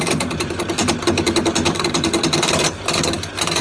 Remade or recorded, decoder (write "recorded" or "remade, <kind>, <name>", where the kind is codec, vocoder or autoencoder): remade, vocoder, BigVGAN v2